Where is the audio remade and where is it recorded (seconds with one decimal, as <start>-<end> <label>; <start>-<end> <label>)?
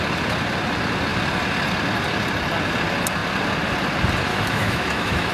0.0-4.3 recorded; 4.3-5.3 remade